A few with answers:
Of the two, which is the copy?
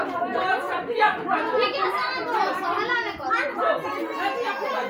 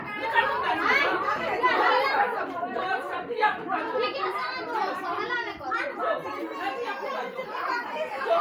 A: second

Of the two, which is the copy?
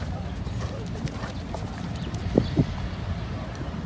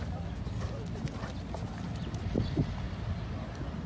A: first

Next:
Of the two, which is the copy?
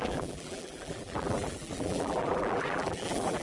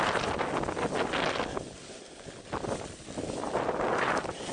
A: first